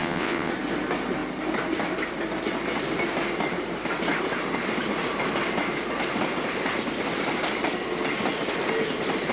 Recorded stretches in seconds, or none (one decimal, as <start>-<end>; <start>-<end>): 0.5-9.3